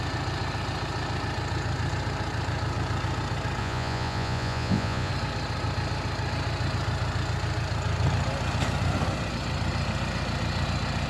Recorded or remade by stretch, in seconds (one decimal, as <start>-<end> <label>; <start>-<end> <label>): 0.0-3.6 recorded; 3.6-5.1 remade; 5.1-11.1 recorded